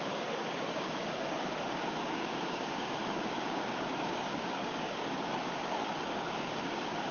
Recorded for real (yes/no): no